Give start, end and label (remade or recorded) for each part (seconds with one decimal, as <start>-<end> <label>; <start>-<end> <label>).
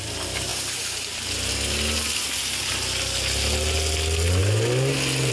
0.0-5.3 recorded